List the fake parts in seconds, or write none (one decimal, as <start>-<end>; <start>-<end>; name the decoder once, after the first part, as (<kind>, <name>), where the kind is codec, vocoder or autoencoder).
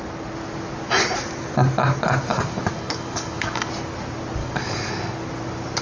2.3-3.7 (codec, DAC); 4.4-4.9